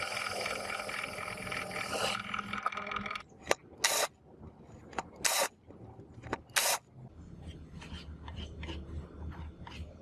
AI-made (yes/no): no